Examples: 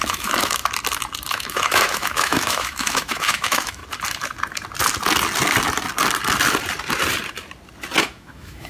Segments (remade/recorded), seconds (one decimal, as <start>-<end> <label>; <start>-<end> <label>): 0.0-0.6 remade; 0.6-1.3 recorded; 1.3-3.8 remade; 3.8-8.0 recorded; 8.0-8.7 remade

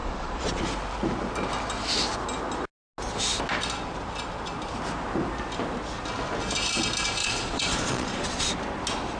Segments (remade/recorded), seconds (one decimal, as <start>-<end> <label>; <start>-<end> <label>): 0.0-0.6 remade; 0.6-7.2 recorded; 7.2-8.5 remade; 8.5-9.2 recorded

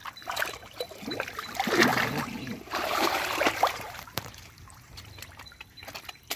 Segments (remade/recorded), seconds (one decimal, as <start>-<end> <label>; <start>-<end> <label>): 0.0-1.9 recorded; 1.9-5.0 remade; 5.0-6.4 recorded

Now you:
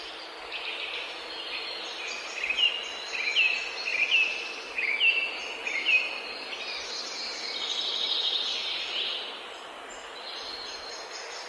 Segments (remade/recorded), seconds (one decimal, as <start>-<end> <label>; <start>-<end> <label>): 0.0-11.5 recorded